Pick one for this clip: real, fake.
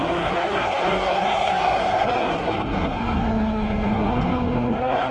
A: fake